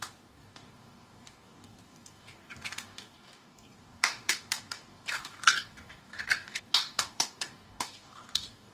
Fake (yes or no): yes